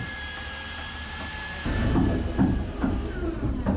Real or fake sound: fake